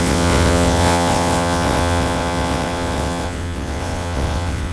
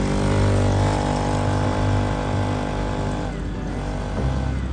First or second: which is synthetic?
first